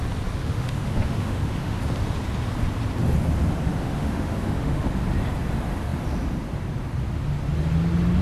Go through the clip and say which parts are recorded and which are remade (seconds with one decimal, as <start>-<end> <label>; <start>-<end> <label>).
0.0-0.4 recorded; 0.4-1.8 remade; 1.8-3.7 recorded; 3.7-4.9 remade; 4.9-8.2 recorded